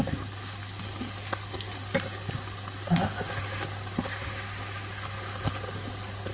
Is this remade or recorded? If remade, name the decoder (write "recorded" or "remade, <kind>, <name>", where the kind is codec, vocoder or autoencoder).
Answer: recorded